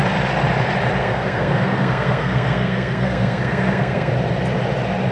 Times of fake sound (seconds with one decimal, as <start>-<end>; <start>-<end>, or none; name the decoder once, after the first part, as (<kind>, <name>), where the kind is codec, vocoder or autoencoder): 1.0-4.1 (codec, SNAC)